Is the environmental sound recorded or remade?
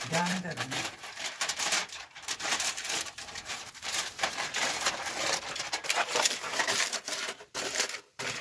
remade